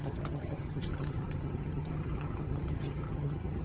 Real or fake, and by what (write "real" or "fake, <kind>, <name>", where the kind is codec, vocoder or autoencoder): fake, vocoder, HiFi-GAN